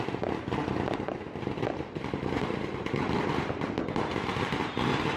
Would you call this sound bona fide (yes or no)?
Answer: no